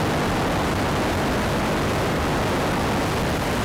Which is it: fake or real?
real